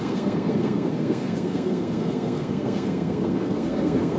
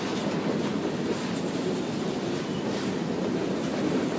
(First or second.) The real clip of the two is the second